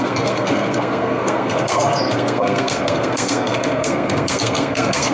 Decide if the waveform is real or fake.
fake